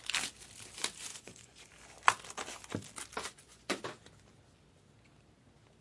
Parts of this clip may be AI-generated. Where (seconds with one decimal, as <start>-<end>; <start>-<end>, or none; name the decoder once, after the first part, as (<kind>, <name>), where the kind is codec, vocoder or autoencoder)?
1.1-1.7 (vocoder, Vocos); 3.2-3.8